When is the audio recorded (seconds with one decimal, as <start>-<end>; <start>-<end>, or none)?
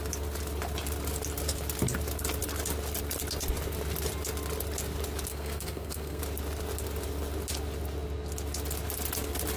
0.0-5.3; 6.2-9.6